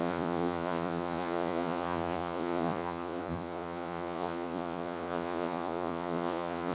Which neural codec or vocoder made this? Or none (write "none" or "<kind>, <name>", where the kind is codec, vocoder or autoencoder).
vocoder, Vocos